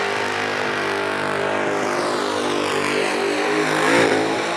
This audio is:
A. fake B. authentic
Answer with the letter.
B